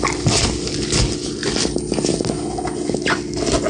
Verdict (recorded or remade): recorded